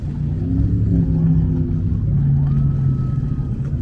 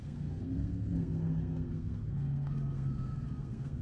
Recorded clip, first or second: first